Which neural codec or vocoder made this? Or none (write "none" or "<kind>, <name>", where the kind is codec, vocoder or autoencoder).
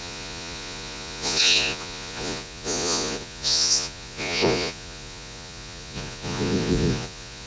vocoder, Vocos